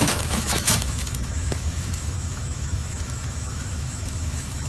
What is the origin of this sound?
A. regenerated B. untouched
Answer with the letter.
A